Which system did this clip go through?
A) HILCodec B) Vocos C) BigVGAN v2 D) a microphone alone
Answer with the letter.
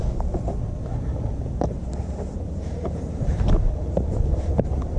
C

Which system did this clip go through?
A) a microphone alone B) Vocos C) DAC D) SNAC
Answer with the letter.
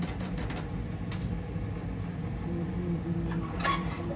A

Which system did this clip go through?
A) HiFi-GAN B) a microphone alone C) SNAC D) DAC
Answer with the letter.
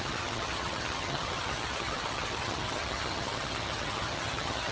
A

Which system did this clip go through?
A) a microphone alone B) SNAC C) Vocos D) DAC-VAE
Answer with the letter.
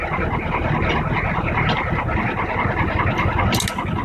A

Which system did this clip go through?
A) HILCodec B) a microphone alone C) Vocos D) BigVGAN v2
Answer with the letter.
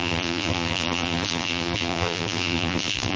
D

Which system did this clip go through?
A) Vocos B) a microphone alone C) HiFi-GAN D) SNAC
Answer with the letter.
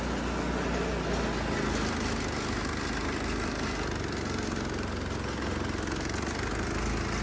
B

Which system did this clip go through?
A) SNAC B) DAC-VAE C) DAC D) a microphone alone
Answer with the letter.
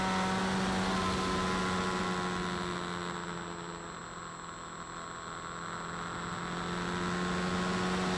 D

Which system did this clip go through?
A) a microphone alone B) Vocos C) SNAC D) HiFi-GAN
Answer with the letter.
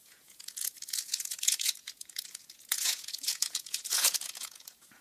B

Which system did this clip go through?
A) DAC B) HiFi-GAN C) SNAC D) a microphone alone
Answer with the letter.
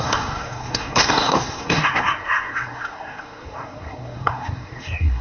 C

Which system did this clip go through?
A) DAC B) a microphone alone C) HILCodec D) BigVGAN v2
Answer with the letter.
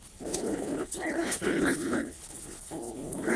C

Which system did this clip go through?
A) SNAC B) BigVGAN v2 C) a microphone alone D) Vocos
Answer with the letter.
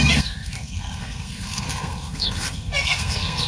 A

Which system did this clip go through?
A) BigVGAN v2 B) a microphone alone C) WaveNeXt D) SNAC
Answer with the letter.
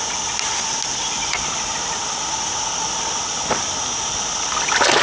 B